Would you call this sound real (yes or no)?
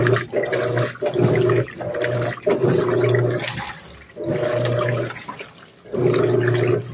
yes